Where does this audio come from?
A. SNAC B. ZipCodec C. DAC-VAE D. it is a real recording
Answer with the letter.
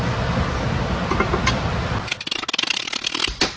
D